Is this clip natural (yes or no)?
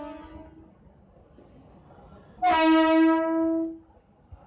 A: yes